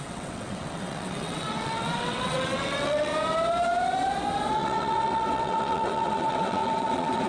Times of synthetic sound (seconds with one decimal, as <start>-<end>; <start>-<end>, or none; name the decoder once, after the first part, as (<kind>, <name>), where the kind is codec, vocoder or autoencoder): 0.0-3.1 (vocoder, WaveNeXt); 4.5-7.3